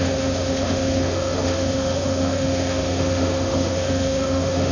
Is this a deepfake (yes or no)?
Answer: yes